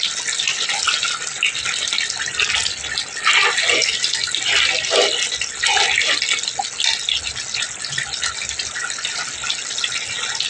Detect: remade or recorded recorded